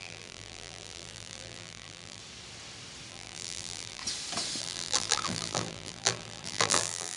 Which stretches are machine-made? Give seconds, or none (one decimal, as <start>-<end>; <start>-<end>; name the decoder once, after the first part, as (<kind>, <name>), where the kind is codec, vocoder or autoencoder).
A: 0.0-2.2 (vocoder, BigVGAN v2); 3.1-4.0; 4.6-7.2